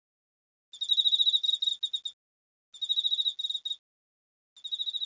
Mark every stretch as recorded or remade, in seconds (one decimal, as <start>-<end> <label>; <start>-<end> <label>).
0.0-5.1 recorded